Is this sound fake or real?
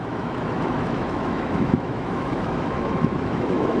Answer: fake